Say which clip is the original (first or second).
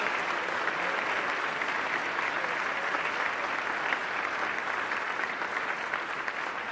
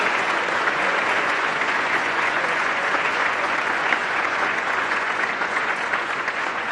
first